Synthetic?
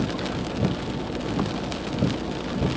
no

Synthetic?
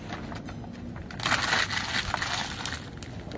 no